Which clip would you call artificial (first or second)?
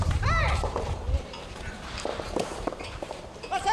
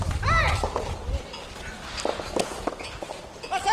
first